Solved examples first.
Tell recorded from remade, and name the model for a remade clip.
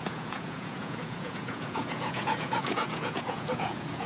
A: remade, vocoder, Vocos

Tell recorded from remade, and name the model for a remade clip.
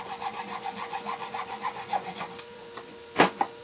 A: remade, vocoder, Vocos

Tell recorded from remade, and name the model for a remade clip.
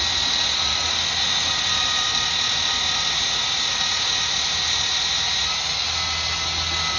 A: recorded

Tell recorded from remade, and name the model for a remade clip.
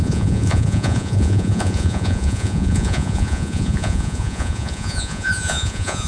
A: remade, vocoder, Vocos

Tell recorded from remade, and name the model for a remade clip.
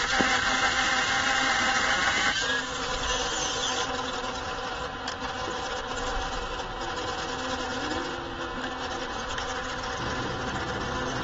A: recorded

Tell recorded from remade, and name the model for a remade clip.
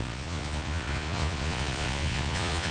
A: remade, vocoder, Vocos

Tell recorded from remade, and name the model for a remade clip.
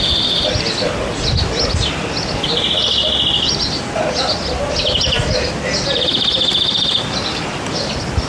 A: recorded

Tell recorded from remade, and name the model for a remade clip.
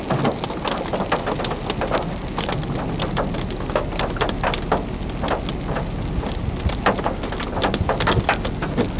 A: recorded